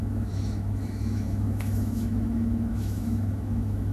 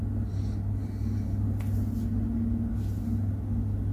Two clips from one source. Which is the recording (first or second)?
second